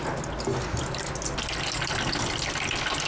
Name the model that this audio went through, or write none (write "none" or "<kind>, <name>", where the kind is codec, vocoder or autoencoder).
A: none